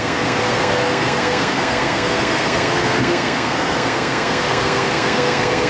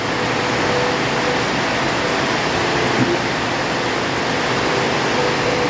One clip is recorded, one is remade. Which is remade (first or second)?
first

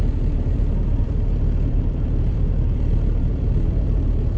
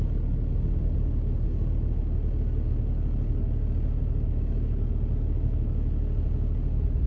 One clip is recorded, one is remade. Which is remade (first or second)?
first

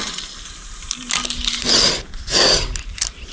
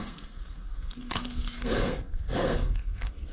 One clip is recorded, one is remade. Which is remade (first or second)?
second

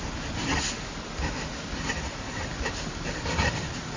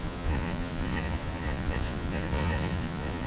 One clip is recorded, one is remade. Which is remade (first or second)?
second